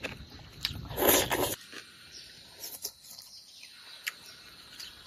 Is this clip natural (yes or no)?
yes